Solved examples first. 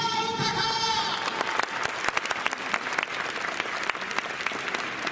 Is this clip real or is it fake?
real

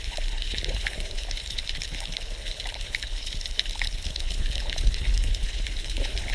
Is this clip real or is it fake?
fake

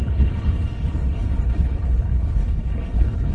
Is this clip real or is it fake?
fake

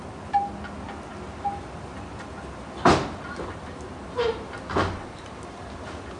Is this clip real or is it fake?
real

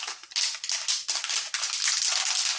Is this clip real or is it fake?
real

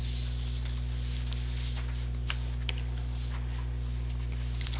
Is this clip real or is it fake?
real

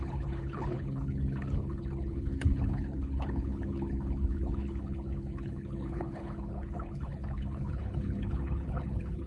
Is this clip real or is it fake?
fake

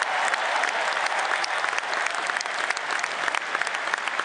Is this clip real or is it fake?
real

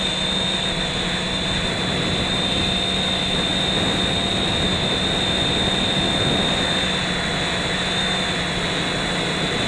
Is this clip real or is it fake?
real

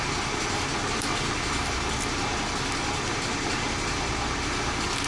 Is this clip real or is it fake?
real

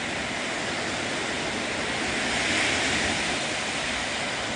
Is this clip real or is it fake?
real